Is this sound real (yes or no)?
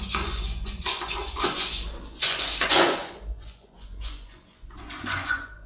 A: no